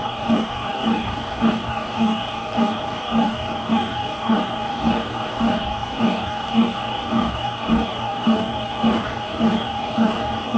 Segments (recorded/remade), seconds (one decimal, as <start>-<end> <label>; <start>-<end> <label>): 0.0-10.6 remade